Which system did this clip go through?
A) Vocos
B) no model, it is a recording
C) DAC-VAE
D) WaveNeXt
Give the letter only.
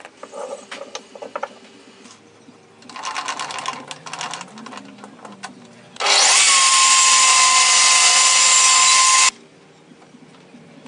B